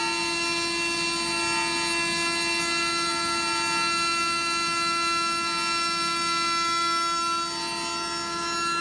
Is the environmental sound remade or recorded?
recorded